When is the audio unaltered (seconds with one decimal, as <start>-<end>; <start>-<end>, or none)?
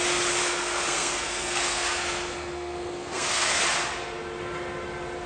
0.0-0.4; 3.6-5.3